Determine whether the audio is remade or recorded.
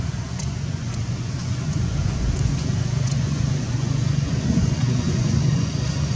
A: remade